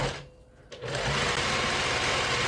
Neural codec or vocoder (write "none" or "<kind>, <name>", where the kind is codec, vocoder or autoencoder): none